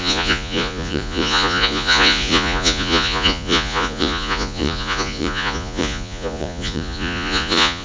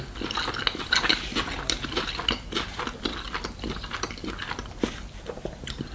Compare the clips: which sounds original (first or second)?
second